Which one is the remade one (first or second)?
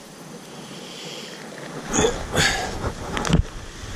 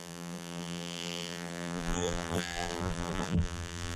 second